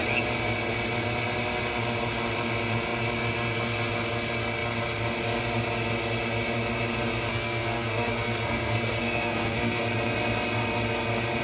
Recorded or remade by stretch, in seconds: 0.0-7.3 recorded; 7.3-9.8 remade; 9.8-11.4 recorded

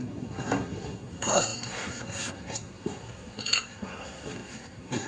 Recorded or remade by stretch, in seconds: 0.0-5.1 remade

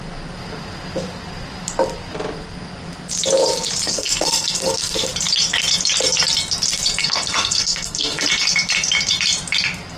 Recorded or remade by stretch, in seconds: 0.0-3.9 recorded; 3.9-5.1 remade; 5.1-7.0 recorded; 7.0-8.2 remade; 8.2-10.0 recorded